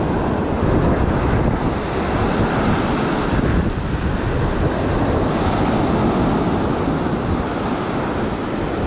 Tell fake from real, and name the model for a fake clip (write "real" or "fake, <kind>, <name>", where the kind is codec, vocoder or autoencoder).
real